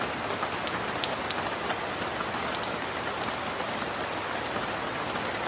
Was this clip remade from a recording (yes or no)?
no